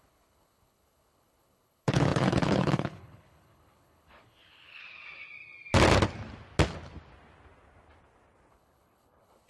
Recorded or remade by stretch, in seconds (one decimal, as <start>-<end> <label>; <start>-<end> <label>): 0.0-4.8 remade; 4.8-8.5 recorded; 8.5-9.5 remade